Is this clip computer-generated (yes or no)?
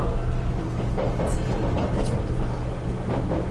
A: no